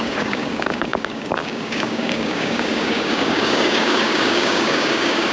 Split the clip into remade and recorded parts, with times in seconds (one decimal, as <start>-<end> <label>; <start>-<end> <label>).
0.0-5.3 remade